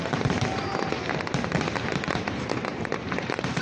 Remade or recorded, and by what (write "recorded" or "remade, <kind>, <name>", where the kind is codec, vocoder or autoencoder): remade, vocoder, BigVGAN v2